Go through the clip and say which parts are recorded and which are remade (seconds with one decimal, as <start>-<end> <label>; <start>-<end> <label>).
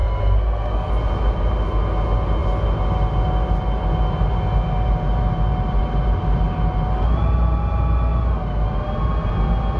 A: 0.0-0.9 remade; 0.9-9.8 recorded